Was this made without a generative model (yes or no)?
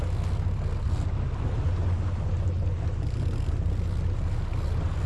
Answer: yes